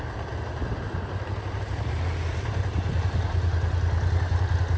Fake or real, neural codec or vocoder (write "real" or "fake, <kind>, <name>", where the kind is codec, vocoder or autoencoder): real